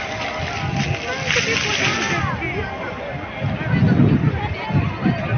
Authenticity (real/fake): real